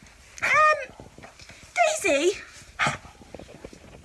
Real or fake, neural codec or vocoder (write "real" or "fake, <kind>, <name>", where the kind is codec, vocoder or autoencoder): real